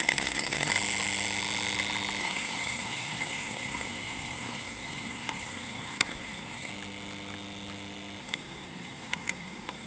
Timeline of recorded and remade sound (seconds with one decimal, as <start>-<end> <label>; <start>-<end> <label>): 0.0-0.7 remade; 0.7-2.2 recorded; 2.2-6.7 remade; 6.7-8.2 recorded; 8.2-9.9 remade